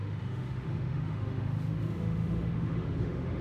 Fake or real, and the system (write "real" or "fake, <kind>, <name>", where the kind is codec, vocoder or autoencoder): fake, autoencoder, DAC-VAE